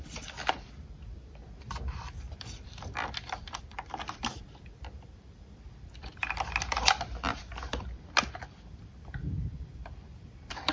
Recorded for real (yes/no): no